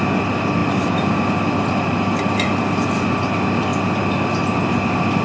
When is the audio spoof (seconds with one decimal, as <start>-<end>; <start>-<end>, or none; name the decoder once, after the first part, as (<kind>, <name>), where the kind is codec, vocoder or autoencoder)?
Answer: none

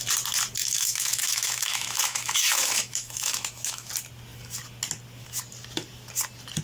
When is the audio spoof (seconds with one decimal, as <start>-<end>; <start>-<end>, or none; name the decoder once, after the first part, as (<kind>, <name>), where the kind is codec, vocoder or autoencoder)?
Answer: 0.6-3.9 (autoencoder, DAC-VAE)

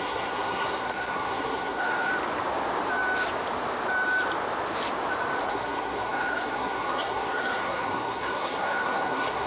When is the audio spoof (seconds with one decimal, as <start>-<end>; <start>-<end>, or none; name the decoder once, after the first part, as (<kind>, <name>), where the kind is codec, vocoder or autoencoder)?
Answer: 0.0-2.1 (codec, SNAC); 5.5-9.5

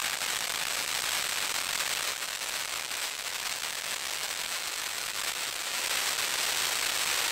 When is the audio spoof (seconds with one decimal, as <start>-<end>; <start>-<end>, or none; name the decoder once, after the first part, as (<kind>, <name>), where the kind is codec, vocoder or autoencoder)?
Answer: 2.1-5.8 (autoencoder, DAC-VAE)

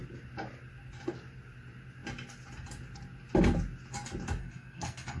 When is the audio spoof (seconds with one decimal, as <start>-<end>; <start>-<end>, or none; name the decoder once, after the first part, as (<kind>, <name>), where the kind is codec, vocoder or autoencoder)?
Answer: 4.4-5.2 (codec, SNAC)

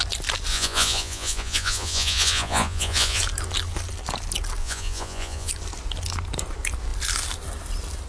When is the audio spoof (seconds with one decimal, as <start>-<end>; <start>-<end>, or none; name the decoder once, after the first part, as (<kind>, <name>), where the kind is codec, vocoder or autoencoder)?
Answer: 0.5-3.2 (vocoder, Vocos); 4.6-5.5

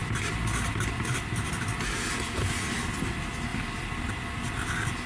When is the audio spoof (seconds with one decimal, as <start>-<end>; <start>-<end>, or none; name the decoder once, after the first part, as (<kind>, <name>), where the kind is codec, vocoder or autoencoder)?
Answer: none